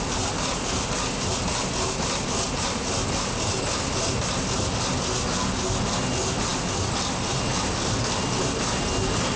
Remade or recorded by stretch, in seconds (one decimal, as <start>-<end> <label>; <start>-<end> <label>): 0.0-9.4 recorded